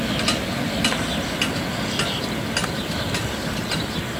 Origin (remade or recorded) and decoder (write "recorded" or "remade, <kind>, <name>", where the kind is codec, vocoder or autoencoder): recorded